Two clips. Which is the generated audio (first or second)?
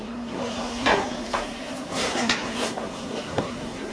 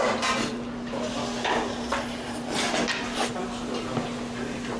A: first